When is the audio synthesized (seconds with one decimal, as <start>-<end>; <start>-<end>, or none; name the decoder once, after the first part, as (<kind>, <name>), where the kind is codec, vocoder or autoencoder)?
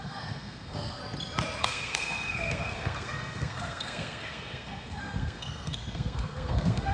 0.0-1.0 (codec, SNAC); 1.6-6.9